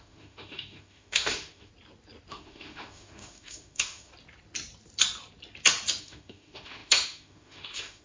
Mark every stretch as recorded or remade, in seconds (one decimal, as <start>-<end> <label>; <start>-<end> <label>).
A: 0.0-1.7 remade; 1.7-2.3 recorded; 2.3-4.1 remade; 4.1-6.0 recorded; 6.0-8.0 remade